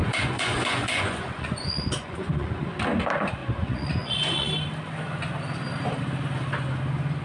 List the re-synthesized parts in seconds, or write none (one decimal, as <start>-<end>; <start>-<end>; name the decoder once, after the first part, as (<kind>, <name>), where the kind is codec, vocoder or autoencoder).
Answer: 0.0-2.7 (vocoder, Vocos); 3.4-4.5